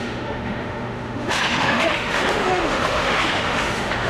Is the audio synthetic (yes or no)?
yes